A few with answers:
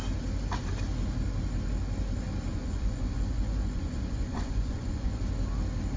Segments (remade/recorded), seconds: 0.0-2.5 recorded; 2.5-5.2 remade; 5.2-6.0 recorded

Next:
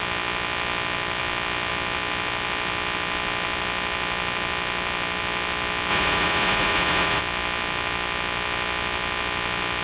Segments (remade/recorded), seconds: 0.0-5.9 recorded; 5.9-7.2 remade; 7.2-9.8 recorded

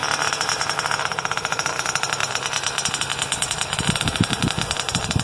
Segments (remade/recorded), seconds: 0.0-5.2 recorded